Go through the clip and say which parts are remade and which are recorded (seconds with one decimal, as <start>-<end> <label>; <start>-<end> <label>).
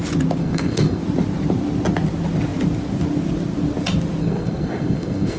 0.0-0.4 recorded; 0.4-1.0 remade; 1.0-4.2 recorded; 4.2-5.4 remade